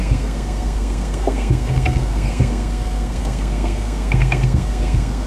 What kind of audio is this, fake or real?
fake